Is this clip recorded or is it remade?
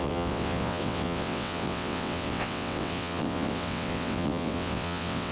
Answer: remade